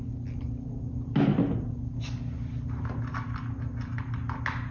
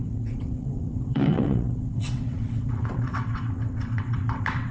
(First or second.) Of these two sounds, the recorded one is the first